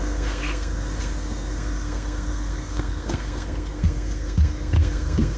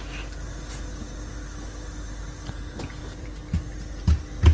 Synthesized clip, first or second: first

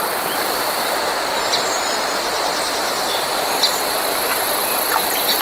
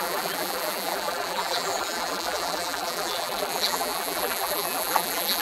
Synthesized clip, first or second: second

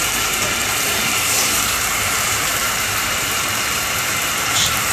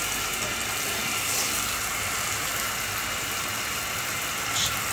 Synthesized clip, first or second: first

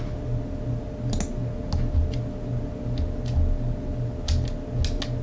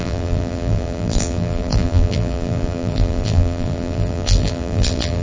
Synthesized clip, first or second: second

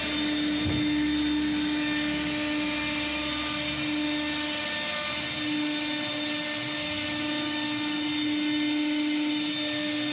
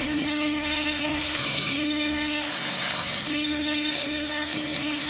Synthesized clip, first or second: second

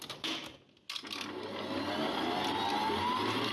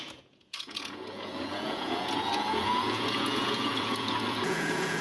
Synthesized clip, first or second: second